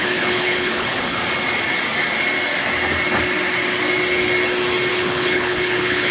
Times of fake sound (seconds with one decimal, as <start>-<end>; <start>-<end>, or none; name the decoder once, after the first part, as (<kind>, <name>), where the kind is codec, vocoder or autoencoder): 0.0-1.2 (codec, HILCodec); 4.9-6.1